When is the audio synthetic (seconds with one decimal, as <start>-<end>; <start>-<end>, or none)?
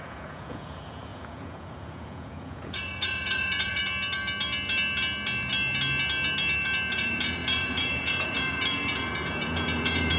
0.0-3.8; 6.9-10.2